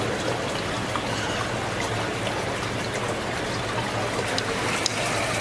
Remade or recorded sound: recorded